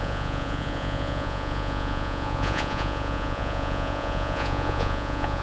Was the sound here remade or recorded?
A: remade